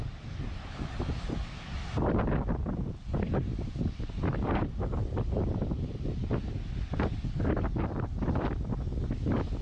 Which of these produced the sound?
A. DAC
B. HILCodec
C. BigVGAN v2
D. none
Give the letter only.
D